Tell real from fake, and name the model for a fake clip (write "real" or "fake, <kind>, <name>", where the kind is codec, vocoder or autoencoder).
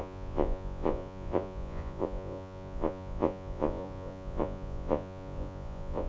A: fake, vocoder, Vocos